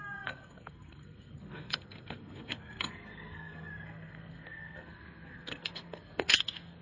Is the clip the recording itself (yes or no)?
no